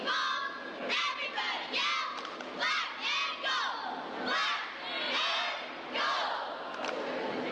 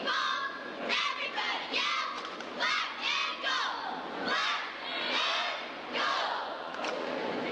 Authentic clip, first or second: first